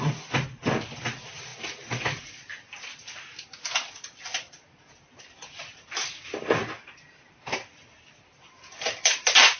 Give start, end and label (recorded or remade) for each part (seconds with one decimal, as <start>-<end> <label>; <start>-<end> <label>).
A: 0.0-9.6 recorded